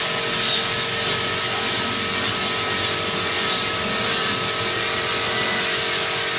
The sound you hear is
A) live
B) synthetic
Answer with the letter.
A